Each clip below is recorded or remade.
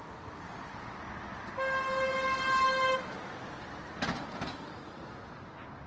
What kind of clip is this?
recorded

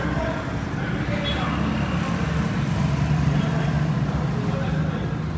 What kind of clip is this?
recorded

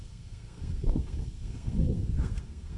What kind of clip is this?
remade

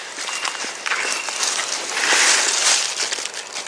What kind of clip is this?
recorded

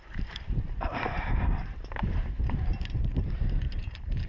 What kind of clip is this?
remade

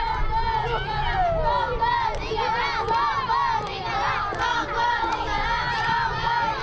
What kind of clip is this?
recorded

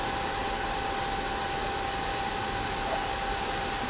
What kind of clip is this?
recorded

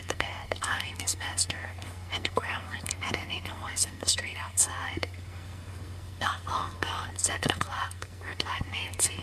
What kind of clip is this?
remade